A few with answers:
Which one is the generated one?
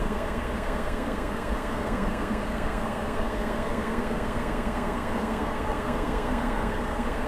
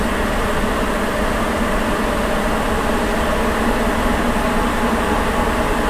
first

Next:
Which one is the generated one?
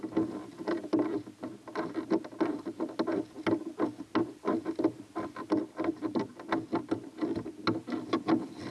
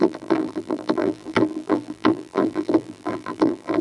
second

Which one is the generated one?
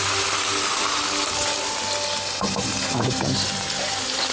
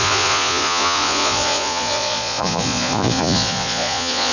second